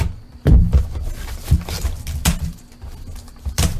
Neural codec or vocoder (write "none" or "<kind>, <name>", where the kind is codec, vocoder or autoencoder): none